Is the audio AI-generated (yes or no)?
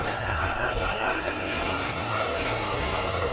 yes